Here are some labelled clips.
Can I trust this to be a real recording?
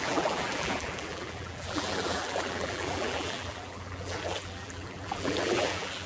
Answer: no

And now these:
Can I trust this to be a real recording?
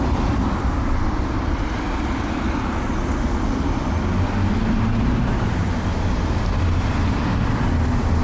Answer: no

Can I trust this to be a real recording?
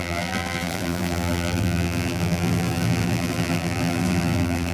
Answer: no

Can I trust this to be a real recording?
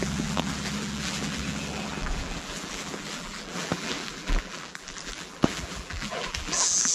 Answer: no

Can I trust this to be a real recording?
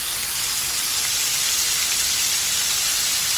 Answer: yes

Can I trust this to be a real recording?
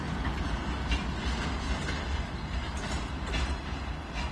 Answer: yes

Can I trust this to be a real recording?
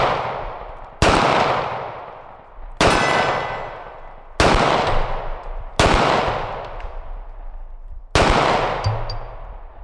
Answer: yes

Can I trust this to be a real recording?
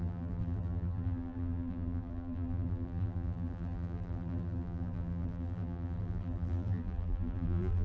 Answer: no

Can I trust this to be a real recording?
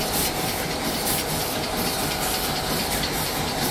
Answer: no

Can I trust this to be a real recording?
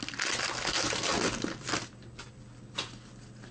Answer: yes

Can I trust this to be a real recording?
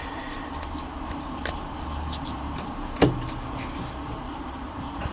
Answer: no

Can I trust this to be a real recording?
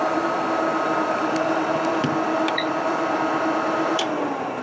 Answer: no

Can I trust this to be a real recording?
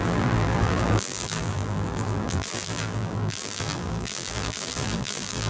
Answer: no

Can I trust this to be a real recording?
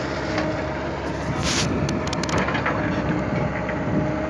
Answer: yes